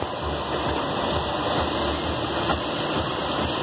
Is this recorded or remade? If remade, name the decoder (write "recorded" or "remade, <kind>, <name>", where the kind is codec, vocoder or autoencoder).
recorded